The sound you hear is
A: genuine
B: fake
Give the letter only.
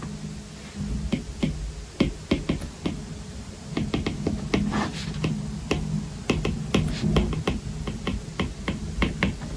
A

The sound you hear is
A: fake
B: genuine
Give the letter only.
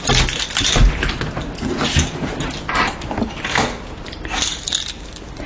B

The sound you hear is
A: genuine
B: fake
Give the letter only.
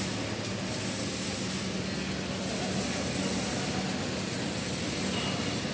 A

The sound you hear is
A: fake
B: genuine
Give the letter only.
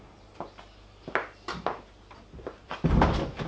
B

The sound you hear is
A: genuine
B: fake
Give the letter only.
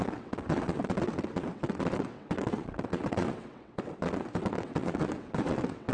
B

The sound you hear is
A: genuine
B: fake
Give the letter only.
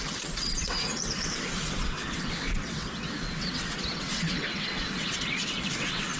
B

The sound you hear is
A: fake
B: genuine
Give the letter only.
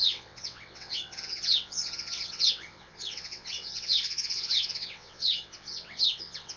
A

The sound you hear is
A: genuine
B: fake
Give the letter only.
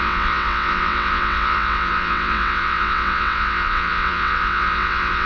B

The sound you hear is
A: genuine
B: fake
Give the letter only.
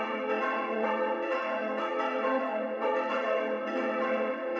B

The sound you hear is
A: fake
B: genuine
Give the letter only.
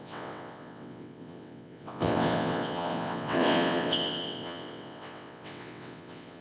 A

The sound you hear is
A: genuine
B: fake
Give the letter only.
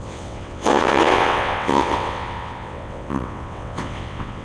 B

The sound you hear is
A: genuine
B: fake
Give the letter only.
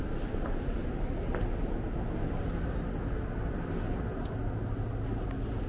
A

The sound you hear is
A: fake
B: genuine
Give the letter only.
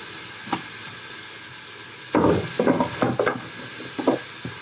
B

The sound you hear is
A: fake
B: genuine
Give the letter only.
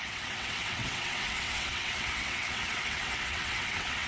A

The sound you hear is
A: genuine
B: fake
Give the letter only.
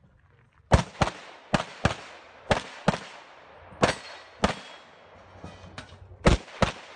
A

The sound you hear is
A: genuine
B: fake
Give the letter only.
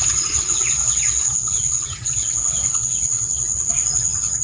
B